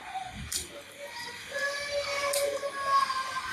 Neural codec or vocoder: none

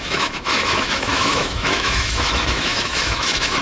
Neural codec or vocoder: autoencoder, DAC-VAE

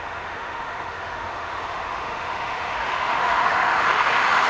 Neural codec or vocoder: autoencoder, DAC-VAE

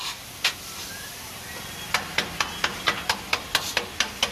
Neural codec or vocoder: none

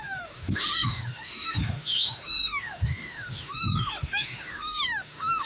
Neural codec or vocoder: autoencoder, DAC-VAE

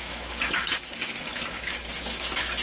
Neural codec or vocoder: autoencoder, DAC-VAE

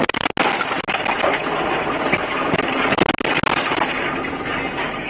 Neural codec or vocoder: none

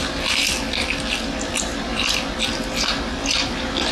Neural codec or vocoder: none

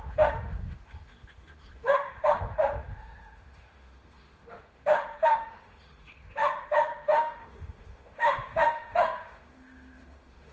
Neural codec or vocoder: autoencoder, DAC-VAE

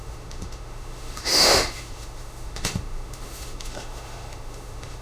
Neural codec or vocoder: autoencoder, DAC-VAE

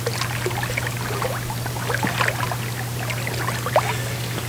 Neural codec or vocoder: none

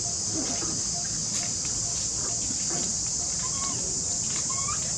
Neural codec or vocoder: none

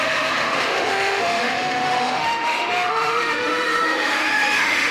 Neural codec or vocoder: autoencoder, DAC-VAE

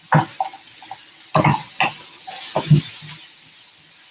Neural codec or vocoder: none